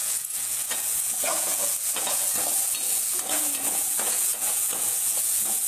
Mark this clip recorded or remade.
remade